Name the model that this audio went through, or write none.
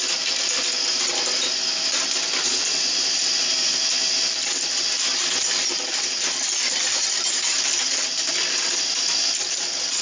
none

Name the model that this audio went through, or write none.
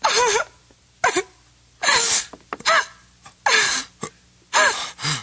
none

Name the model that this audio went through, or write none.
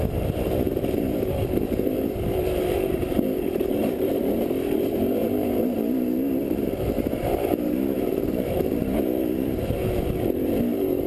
vocoder, BigVGAN v2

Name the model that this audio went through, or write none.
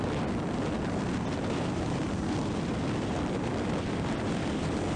none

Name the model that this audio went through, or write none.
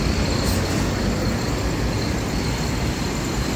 none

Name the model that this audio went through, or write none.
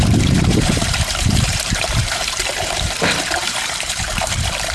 vocoder, BigVGAN v2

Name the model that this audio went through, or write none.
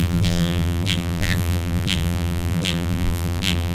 vocoder, BigVGAN v2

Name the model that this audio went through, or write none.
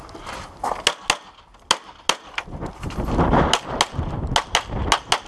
none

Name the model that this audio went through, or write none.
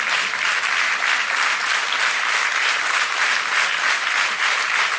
none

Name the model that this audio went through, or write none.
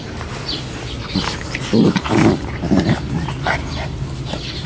vocoder, BigVGAN v2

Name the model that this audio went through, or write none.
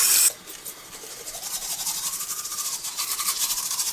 vocoder, BigVGAN v2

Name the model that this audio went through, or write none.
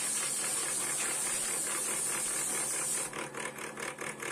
none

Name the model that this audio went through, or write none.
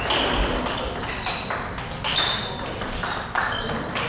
none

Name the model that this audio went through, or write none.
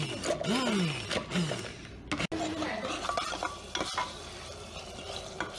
none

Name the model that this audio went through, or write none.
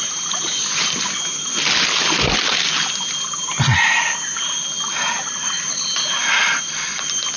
none